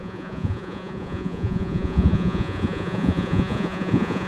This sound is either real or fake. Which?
fake